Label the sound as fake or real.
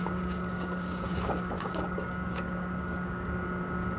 fake